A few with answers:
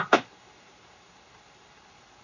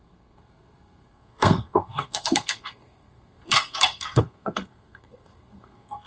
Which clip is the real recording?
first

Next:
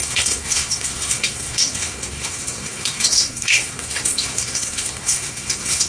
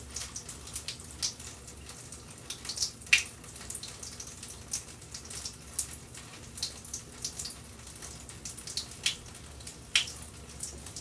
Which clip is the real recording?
second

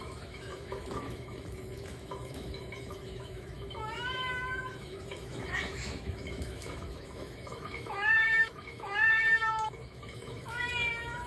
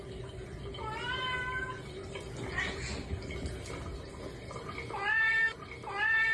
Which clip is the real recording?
second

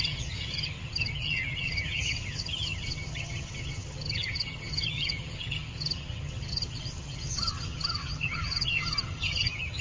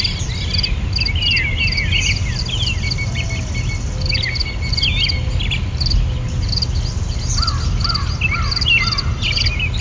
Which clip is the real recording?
second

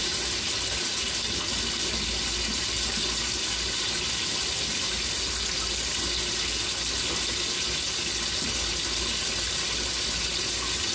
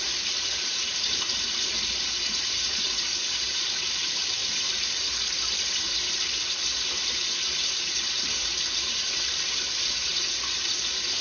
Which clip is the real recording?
first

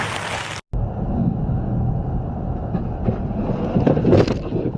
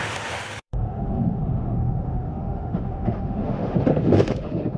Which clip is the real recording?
first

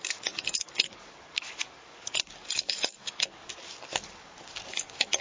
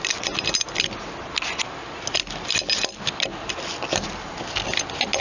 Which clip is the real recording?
second